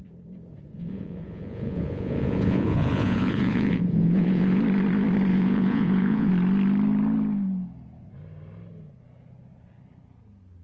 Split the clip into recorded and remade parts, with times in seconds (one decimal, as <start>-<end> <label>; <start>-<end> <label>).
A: 0.0-0.7 recorded; 0.7-4.6 remade; 4.6-5.3 recorded; 5.3-6.3 remade; 6.3-10.6 recorded